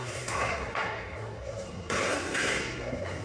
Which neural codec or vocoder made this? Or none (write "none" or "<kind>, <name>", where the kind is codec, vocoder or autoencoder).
codec, SNAC